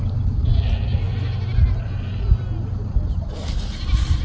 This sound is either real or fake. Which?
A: real